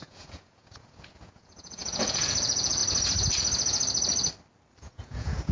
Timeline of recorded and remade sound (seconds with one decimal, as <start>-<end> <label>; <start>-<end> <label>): 0.0-2.8 remade; 2.8-4.8 recorded; 4.8-5.5 remade